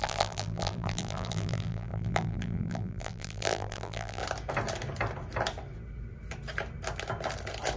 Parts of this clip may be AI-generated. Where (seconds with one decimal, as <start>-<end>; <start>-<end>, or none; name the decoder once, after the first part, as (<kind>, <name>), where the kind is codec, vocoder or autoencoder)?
0.0-4.2 (vocoder, BigVGAN v2)